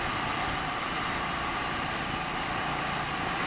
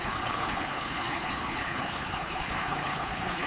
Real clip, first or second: first